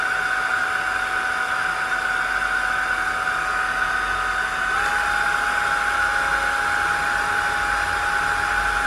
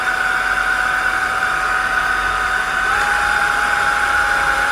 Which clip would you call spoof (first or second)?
second